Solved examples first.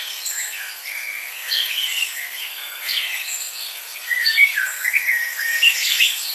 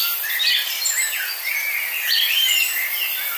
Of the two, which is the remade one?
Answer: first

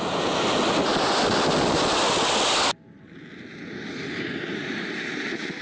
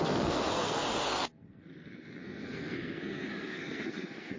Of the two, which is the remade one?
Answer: second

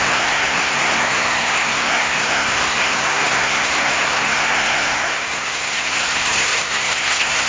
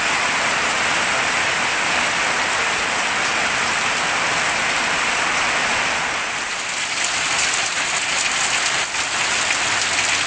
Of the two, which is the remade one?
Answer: first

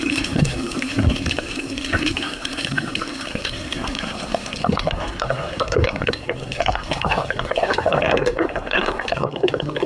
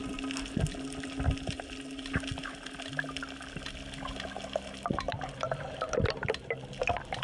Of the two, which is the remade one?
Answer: first